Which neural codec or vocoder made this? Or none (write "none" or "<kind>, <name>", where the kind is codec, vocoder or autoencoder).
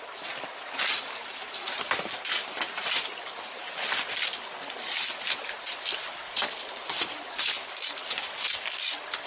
none